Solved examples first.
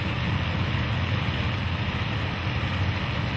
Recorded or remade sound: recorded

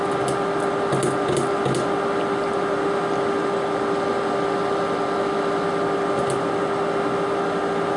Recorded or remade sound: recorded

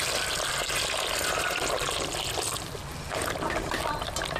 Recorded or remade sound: recorded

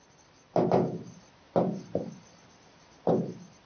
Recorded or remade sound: remade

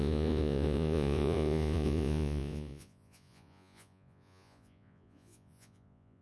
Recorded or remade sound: remade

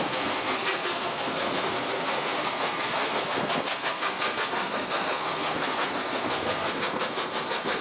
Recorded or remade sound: remade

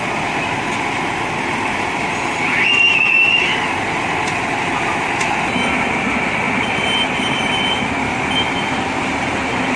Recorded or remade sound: recorded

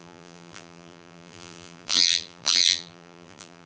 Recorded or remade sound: remade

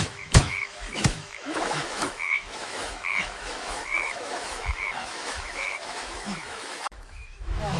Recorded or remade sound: remade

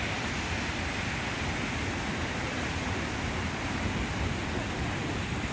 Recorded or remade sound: recorded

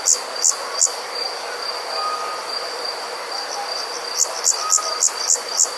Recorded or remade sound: recorded